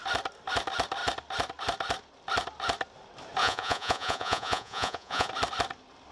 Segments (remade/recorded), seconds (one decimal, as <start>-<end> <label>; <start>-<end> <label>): 0.0-3.4 recorded; 3.4-5.3 remade; 5.3-6.1 recorded